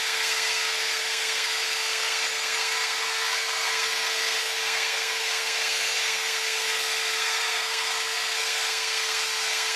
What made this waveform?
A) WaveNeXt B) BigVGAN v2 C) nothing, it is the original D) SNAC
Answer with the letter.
D